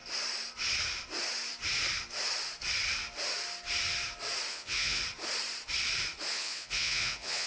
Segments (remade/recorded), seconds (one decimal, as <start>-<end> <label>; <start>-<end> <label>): 0.0-4.5 recorded; 4.5-5.0 remade; 5.0-6.3 recorded; 6.3-7.5 remade